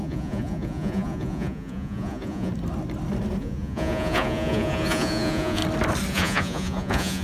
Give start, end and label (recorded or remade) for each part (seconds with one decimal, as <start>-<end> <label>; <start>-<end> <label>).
0.0-2.5 remade; 2.5-3.4 recorded; 3.4-5.6 remade; 5.6-6.1 recorded; 6.1-7.2 remade